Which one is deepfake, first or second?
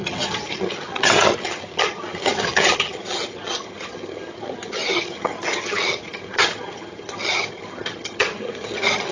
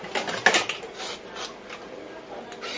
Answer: first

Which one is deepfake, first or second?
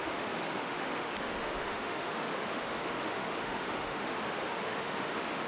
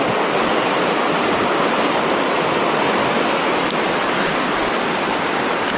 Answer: first